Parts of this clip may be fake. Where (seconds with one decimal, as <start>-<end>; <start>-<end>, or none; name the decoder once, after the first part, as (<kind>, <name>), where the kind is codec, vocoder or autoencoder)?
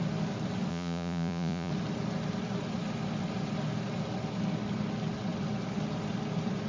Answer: 0.7-1.7 (vocoder, Vocos)